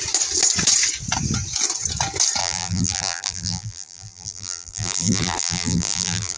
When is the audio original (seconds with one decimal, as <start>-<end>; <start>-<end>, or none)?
0.0-2.4